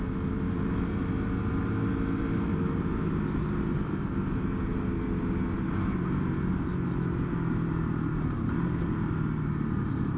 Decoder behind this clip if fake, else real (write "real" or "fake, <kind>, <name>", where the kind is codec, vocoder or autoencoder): real